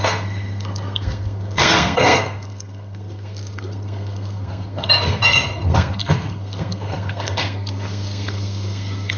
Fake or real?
fake